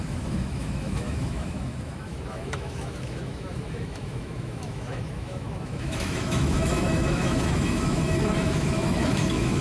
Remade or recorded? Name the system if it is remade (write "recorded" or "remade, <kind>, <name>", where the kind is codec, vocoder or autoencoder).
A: remade, autoencoder, DAC-VAE